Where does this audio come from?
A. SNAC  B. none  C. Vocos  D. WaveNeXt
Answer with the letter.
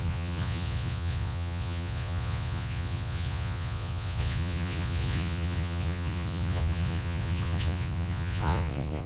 C